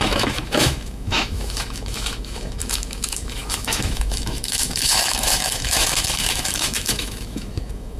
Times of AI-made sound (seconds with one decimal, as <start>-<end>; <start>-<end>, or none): 0.0-8.0